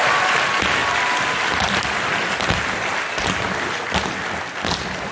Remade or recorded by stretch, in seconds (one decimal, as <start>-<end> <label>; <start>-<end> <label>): 0.0-5.1 recorded